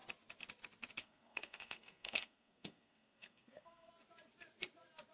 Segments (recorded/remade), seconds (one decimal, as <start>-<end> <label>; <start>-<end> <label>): 0.0-1.0 recorded; 1.0-3.9 remade; 3.9-5.1 recorded